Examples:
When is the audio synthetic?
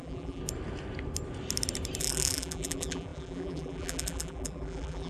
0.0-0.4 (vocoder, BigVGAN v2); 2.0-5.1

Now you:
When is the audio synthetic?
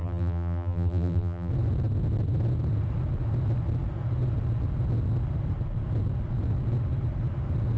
0.0-1.5 (vocoder, BigVGAN v2)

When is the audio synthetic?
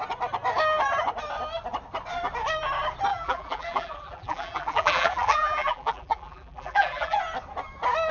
3.1-7.2 (vocoder, BigVGAN v2)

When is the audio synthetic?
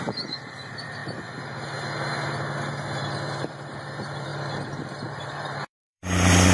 0.0-1.0 (vocoder, BigVGAN v2); 3.5-4.3; 5.1-6.5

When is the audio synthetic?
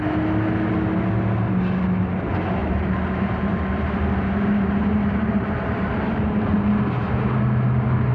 2.6-7.1 (vocoder, BigVGAN v2)